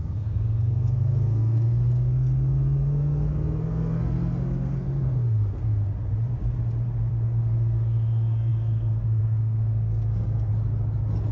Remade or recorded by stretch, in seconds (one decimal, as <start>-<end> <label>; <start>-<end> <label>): 0.0-5.8 remade; 5.8-7.1 recorded; 7.1-10.5 remade; 10.5-11.3 recorded

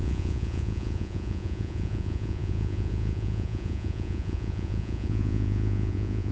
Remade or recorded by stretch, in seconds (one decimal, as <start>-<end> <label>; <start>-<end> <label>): 0.0-6.3 remade